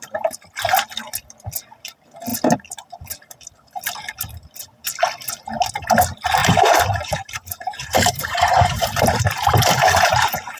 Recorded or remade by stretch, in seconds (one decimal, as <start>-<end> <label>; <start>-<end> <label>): 0.0-6.4 recorded; 6.4-10.6 remade